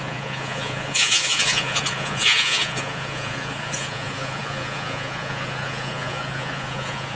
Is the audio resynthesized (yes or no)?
yes